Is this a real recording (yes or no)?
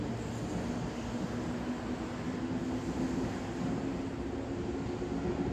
yes